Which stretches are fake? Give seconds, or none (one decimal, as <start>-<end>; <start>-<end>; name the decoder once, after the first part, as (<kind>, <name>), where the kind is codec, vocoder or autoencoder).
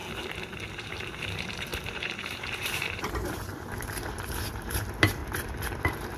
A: 0.8-5.2 (vocoder, BigVGAN v2); 5.8-6.2